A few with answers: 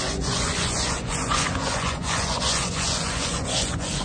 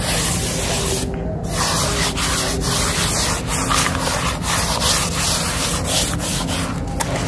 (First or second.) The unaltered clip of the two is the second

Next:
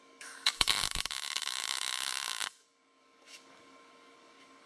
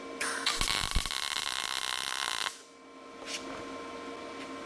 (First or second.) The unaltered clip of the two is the second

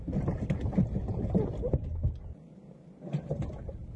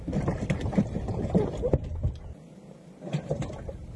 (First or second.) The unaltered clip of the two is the first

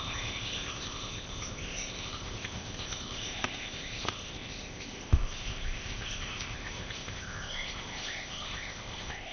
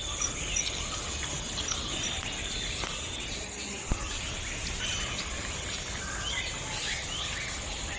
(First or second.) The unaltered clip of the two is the second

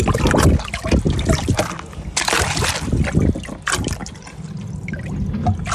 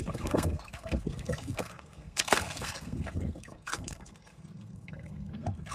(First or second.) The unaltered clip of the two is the first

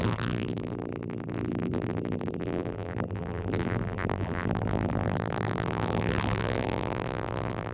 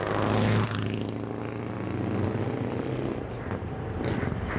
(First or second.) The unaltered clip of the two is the second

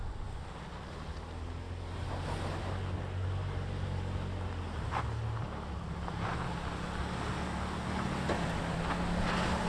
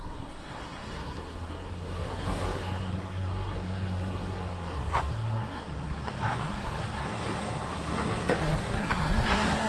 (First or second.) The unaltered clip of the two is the first